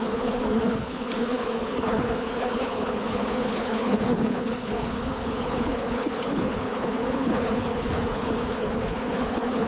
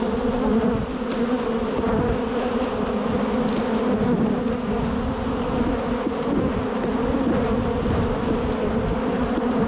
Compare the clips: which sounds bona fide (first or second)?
second